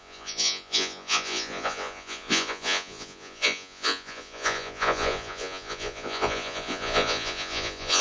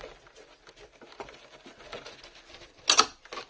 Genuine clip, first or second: second